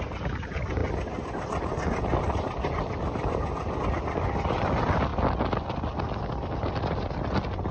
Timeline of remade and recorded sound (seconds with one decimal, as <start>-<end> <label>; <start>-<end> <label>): 0.0-7.7 recorded